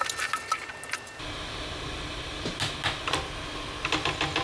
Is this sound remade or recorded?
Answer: recorded